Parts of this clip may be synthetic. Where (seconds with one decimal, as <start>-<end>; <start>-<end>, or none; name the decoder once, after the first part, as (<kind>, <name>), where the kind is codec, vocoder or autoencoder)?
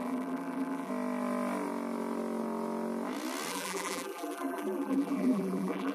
0.0-0.9 (vocoder, BigVGAN v2); 3.5-5.9